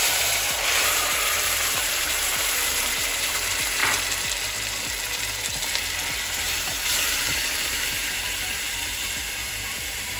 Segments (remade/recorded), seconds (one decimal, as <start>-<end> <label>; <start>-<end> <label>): 0.0-3.8 remade; 3.8-6.2 recorded; 6.2-10.2 remade